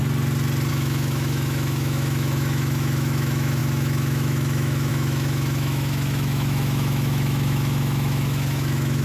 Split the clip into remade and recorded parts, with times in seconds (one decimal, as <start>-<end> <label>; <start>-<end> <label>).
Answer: 0.0-0.7 recorded; 0.7-9.0 remade